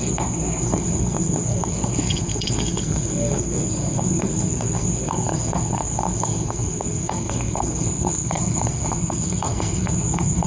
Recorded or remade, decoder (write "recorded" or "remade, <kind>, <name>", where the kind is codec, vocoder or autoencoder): remade, codec, SNAC